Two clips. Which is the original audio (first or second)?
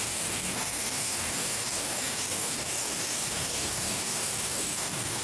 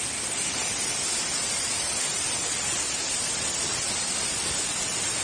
second